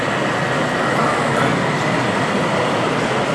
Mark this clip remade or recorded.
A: recorded